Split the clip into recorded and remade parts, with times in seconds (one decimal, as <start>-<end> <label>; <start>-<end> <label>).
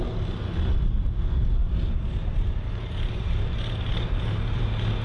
0.0-1.6 recorded; 1.6-4.6 remade; 4.6-5.0 recorded